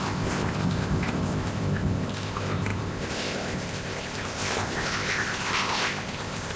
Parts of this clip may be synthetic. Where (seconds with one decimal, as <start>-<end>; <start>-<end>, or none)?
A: 0.0-6.6